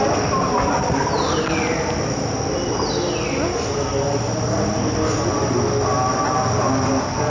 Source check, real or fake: real